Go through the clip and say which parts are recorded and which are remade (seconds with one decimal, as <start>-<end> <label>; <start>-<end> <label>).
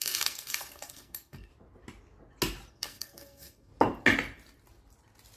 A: 0.0-1.5 remade; 1.5-2.7 recorded; 2.7-3.7 remade; 3.7-5.4 recorded